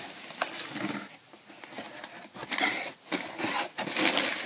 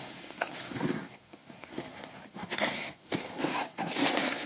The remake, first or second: second